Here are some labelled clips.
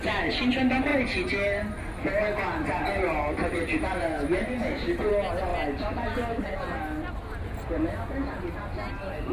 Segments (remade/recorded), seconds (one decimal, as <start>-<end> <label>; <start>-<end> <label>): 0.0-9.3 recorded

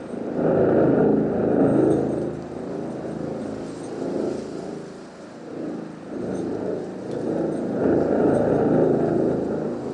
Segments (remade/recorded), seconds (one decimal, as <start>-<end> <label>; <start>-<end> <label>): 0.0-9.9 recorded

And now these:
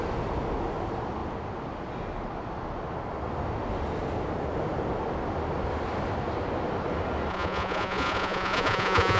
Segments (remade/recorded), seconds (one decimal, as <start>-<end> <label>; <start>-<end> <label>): 0.0-7.3 recorded; 7.3-9.2 remade

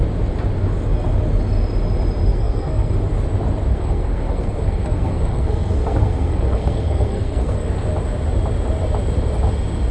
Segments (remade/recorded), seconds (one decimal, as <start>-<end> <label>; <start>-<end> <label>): 0.0-2.3 recorded; 2.3-2.9 remade; 2.9-3.7 recorded; 3.7-7.7 remade; 7.7-9.9 recorded